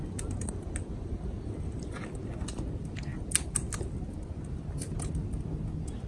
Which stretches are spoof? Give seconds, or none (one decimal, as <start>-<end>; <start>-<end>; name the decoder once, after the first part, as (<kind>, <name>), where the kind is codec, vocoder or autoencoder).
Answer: none